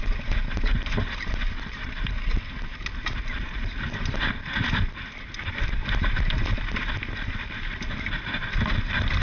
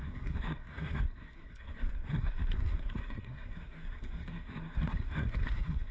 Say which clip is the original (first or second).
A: first